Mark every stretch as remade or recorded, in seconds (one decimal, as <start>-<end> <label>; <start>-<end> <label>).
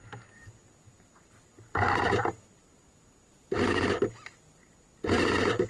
0.0-5.7 recorded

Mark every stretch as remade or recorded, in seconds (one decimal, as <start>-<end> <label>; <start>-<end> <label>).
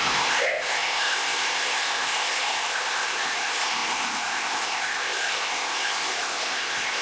0.0-7.0 remade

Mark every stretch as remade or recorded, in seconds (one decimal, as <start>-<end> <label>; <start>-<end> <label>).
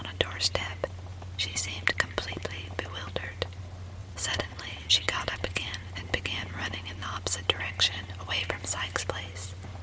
0.0-4.0 recorded; 4.0-5.7 remade; 5.7-9.8 recorded